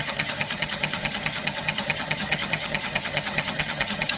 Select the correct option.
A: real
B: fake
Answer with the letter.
B